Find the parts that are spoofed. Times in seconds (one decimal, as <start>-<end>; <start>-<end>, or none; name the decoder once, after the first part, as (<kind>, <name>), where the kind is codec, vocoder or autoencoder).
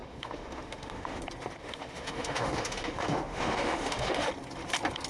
0.0-1.2 (autoencoder, DAC-VAE); 1.6-4.3